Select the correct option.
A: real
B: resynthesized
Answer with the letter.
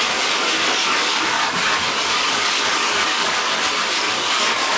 B